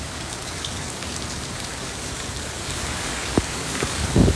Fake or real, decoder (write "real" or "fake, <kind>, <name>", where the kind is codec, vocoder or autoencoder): fake, codec, DAC